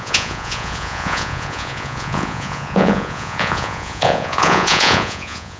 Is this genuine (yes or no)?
no